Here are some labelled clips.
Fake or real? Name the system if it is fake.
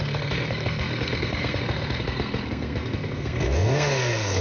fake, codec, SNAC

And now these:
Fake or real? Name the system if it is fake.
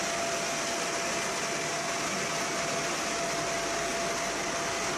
real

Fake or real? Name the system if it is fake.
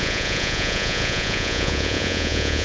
fake, vocoder, Vocos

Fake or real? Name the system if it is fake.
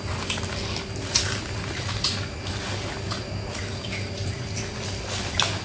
real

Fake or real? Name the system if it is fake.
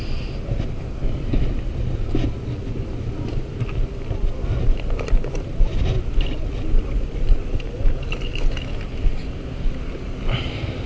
real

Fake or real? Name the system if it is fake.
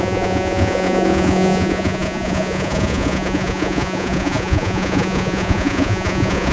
fake, vocoder, Vocos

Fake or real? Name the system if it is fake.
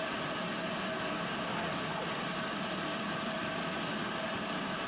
fake, vocoder, BigVGAN v2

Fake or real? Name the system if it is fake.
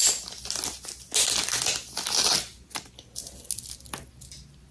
real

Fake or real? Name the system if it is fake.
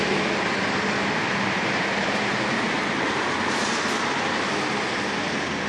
real